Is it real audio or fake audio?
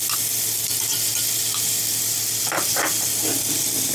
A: real